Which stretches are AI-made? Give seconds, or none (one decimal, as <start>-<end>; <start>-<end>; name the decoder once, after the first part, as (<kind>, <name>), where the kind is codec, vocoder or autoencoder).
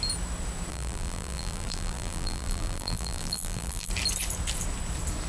0.7-3.9 (vocoder, BigVGAN v2)